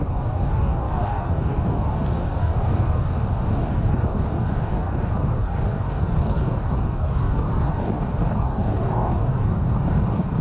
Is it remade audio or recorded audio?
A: remade